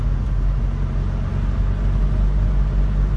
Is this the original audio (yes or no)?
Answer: yes